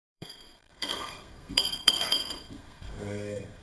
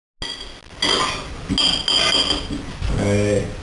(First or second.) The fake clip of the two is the first